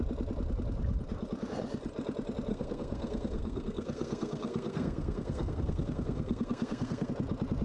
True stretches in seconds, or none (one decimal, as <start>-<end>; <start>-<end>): 0.0-2.5; 7.1-7.6